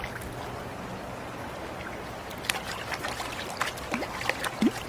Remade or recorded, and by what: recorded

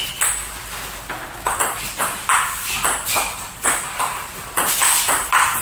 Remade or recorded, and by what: recorded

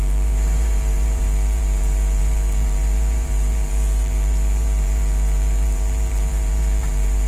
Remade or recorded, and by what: remade, vocoder, BigVGAN v2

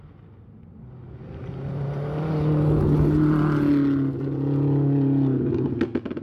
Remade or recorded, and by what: recorded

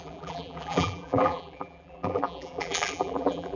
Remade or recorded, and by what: remade, vocoder, BigVGAN v2